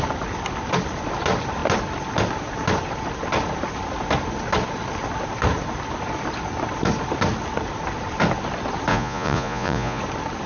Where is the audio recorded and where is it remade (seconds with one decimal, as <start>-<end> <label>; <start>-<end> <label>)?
0.0-8.9 recorded; 8.9-10.0 remade; 10.0-10.5 recorded